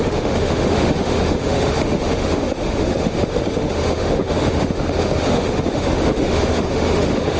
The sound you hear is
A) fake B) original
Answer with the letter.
A